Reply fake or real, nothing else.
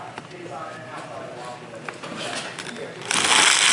real